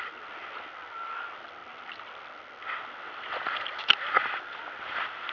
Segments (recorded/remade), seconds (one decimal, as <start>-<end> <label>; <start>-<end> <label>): 0.0-5.3 recorded